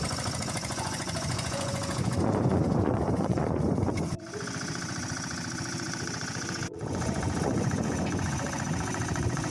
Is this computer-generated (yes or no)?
yes